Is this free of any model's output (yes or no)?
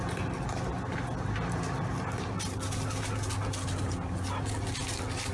yes